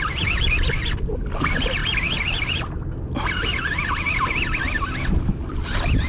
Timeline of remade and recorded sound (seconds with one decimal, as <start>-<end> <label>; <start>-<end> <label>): 0.0-6.1 recorded